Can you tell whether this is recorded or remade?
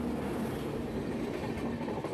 recorded